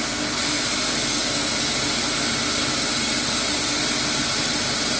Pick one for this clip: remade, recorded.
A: recorded